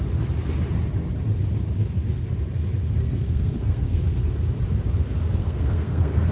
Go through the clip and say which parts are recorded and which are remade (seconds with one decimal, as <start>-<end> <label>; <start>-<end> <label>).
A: 0.0-3.0 recorded; 3.0-4.4 remade; 4.4-5.4 recorded; 5.4-6.3 remade